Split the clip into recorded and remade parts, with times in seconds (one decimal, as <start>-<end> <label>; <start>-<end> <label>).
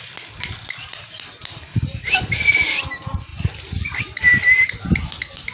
0.0-5.5 recorded